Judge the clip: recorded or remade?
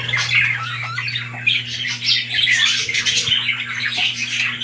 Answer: recorded